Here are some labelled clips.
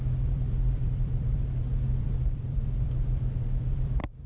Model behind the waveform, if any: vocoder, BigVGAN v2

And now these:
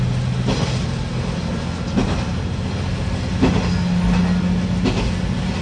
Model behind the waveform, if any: none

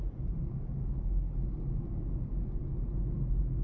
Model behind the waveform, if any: none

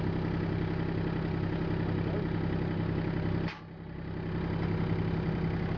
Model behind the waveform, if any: none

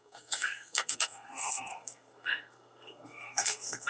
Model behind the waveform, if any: codec, SNAC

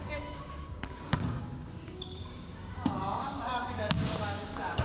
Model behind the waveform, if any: codec, DAC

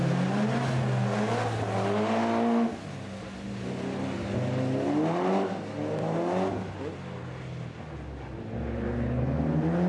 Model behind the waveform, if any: none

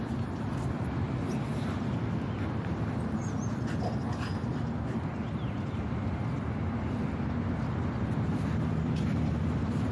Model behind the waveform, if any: none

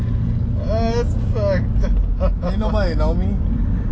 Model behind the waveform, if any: none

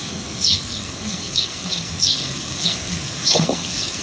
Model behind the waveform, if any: codec, SNAC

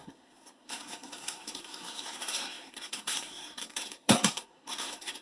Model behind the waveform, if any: codec, SNAC